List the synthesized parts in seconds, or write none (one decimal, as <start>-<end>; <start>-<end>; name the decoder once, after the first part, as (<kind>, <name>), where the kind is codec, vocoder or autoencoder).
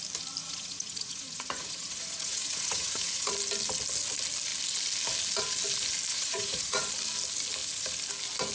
0.4-3.3 (vocoder, Vocos); 6.1-6.9